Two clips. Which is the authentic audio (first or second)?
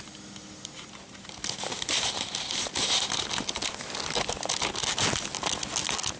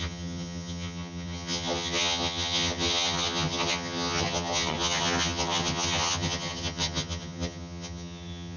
first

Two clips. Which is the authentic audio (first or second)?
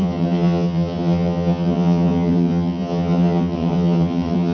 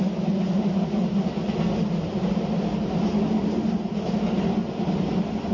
second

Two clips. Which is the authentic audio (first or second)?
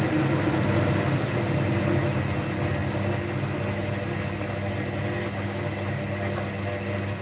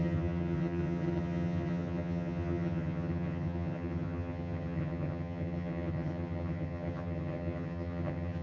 first